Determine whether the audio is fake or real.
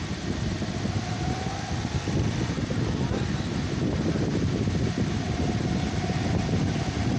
real